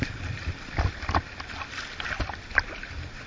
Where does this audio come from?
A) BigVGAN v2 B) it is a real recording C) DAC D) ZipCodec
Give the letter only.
B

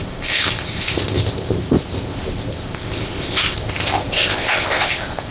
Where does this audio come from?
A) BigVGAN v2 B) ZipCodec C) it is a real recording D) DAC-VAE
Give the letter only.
B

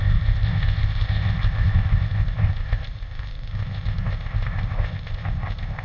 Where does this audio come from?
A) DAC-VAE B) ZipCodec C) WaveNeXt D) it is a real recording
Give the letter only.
B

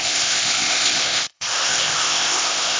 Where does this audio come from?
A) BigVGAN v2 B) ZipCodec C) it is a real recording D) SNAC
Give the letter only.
B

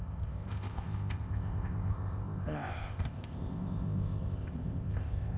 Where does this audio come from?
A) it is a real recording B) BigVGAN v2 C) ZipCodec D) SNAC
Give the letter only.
C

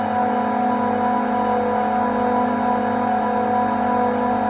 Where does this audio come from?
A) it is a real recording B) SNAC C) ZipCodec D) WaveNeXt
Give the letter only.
A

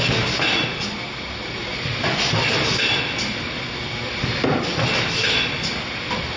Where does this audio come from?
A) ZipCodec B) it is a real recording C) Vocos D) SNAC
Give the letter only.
B